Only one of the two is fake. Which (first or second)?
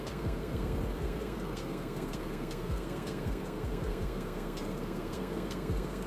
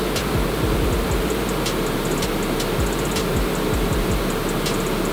first